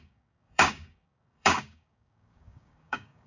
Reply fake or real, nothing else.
fake